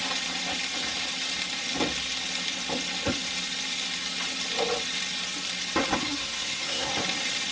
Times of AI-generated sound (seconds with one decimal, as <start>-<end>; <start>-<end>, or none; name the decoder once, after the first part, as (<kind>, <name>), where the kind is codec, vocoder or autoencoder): 6.0-6.9 (codec, SNAC)

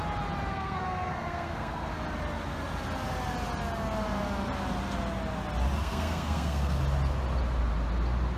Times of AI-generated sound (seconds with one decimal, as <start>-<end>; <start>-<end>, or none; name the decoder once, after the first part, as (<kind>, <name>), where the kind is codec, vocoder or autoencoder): 0.5-1.9 (codec, SNAC); 5.8-6.8

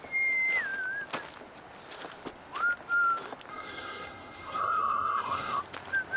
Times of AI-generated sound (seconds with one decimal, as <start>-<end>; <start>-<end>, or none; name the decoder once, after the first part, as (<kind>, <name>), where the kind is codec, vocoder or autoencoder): 3.5-5.6 (codec, SNAC)

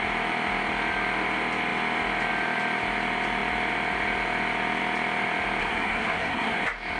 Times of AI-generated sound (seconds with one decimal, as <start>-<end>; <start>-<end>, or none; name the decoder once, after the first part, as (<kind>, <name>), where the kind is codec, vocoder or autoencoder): 5.6-6.6 (codec, SNAC)